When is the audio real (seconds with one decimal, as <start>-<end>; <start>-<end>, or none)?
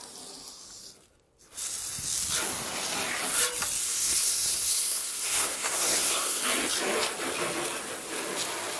0.0-3.8; 6.4-8.8